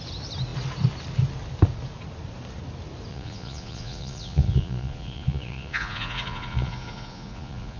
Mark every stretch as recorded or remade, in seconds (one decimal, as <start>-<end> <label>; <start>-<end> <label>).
0.0-3.1 recorded; 3.1-7.8 remade